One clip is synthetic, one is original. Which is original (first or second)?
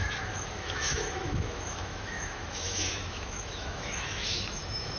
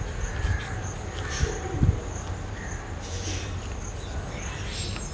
second